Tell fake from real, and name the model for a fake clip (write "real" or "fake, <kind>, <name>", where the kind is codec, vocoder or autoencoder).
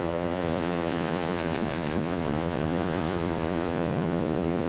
fake, vocoder, Vocos